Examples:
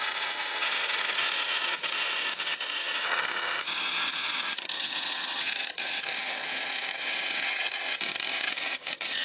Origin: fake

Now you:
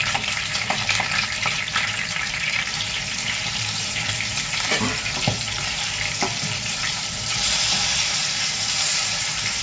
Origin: fake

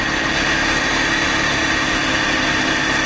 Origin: real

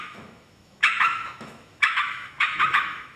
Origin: fake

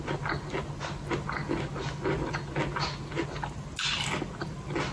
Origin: real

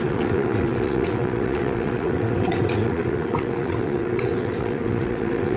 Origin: fake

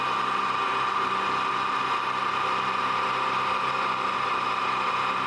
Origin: real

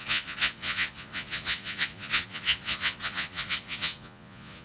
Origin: fake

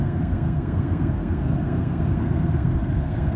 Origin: fake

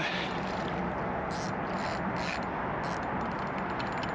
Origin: real